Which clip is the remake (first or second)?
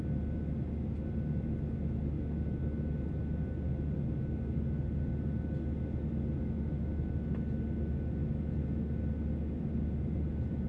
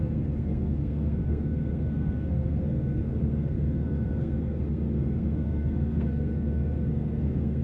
second